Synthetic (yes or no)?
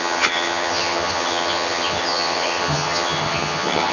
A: yes